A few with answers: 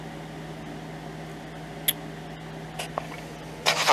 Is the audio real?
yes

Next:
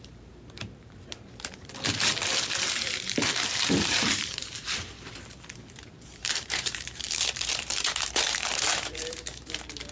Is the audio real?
no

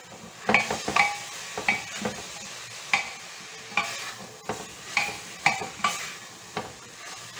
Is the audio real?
yes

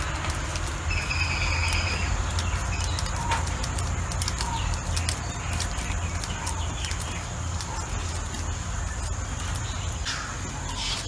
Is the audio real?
yes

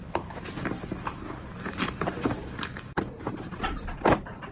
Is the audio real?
no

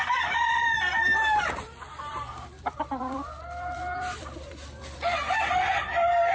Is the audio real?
no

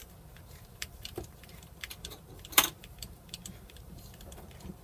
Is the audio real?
no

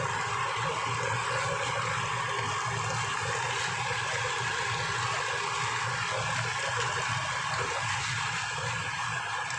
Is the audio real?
yes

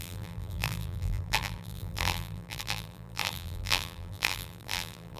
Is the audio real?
no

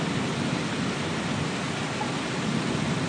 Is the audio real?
yes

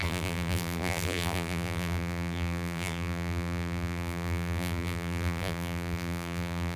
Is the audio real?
no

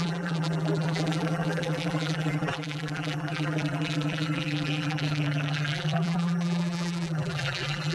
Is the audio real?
no